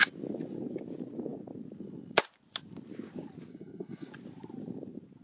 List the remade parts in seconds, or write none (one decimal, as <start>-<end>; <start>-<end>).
3.5-4.1